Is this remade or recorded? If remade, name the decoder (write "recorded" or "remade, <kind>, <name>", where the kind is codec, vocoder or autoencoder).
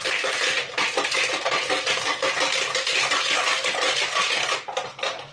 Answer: recorded